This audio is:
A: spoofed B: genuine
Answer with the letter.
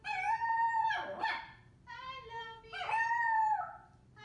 A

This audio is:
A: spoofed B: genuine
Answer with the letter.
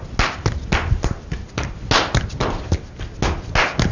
B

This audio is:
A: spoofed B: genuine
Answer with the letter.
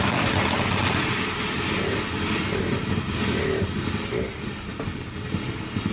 B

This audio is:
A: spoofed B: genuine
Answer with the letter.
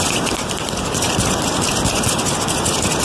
B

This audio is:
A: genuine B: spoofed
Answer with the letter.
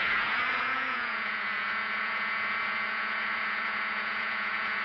B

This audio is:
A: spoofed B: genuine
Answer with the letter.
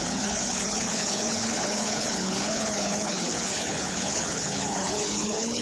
A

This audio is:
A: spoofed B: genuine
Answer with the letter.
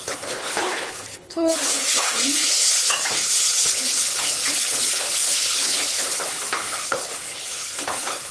A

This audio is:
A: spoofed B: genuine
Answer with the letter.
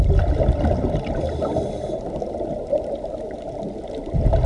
B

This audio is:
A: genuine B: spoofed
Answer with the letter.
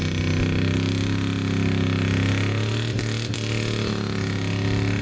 A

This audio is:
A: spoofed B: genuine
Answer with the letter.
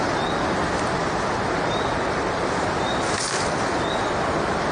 B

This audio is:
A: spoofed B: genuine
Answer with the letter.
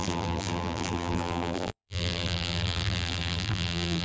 A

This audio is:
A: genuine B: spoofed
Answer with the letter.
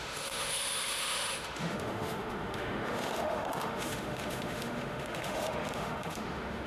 B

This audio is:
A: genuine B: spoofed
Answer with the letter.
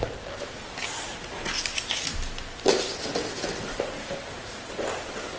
A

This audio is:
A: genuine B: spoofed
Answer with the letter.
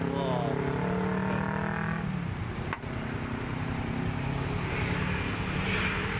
A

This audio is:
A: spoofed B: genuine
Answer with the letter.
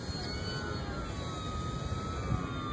B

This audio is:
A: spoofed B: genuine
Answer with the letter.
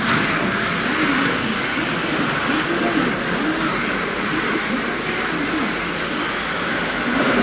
A